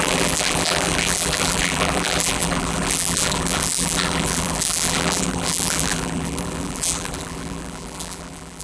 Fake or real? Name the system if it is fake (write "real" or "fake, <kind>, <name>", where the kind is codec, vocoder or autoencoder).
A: fake, vocoder, BigVGAN v2